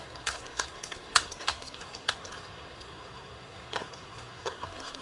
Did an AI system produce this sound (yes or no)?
yes